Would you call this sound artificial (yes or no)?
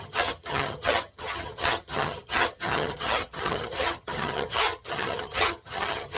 yes